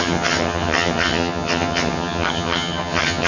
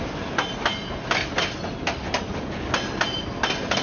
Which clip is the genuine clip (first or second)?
second